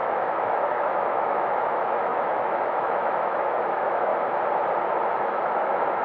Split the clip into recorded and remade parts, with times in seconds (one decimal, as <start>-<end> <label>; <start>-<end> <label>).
0.0-4.1 remade; 4.1-5.1 recorded; 5.1-6.0 remade